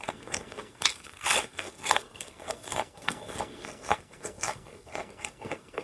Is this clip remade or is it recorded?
remade